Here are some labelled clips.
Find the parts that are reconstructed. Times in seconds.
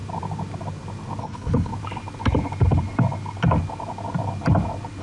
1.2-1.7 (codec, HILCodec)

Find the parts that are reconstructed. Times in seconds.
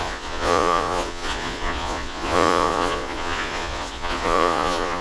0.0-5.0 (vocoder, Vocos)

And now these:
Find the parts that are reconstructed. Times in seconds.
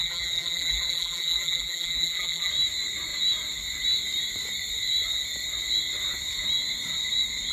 0.0-2.5 (vocoder, BigVGAN v2)